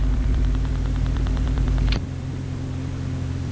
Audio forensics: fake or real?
fake